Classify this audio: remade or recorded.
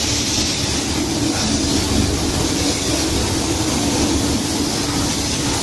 recorded